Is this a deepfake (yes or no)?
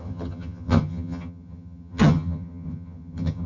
yes